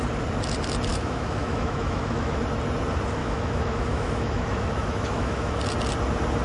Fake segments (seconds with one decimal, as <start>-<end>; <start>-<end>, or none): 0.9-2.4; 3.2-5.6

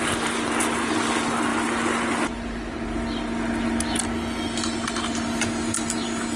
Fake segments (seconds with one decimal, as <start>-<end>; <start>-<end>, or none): none

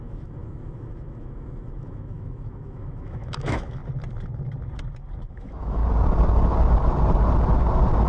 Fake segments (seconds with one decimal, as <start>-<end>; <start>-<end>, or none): 0.0-3.8; 5.3-5.8